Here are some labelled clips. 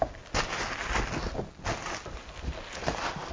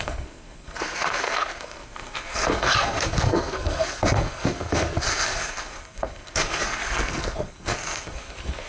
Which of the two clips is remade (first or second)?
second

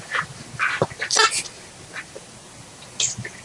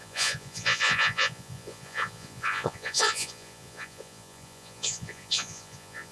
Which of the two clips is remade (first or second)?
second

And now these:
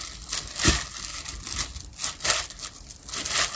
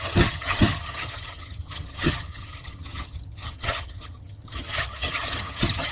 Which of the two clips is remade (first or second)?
second